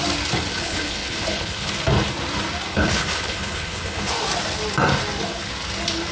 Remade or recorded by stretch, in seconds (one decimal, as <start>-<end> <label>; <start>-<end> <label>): 0.0-0.5 recorded; 0.5-1.7 remade; 1.7-2.7 recorded; 2.7-4.1 remade; 4.1-6.1 recorded